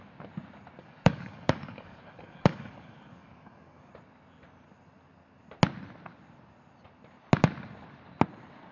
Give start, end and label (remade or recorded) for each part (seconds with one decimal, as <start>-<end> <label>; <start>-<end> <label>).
0.0-0.8 recorded; 0.8-3.9 remade; 3.9-8.7 recorded

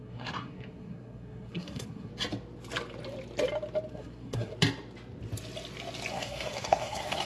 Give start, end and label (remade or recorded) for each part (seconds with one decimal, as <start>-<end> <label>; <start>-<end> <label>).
0.0-2.1 remade; 2.1-3.9 recorded; 3.9-4.5 remade; 4.5-6.1 recorded; 6.1-7.3 remade

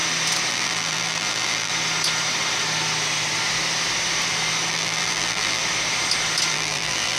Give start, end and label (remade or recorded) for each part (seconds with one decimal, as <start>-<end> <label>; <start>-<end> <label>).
0.0-0.5 recorded; 0.5-1.7 remade; 1.7-4.7 recorded; 4.7-5.6 remade; 5.6-6.5 recorded; 6.5-7.2 remade

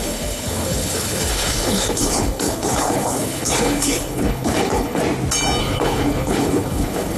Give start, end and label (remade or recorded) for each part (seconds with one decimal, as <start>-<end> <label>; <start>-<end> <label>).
0.0-5.0 remade; 5.0-5.6 recorded; 5.6-7.2 remade

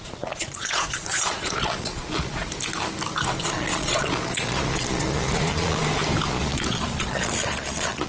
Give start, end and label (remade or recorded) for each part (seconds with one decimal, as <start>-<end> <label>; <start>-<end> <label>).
0.0-2.5 remade; 2.5-3.4 recorded; 3.4-5.8 remade; 5.8-6.3 recorded; 6.3-8.1 remade